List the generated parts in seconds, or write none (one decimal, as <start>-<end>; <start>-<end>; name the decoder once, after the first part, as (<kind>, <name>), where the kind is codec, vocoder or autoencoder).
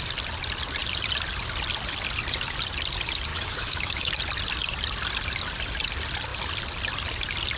3.3-4.1 (autoencoder, DAC-VAE)